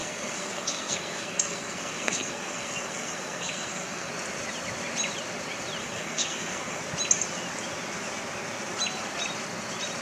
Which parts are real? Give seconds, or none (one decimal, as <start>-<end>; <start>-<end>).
4.1-5.8; 6.8-10.0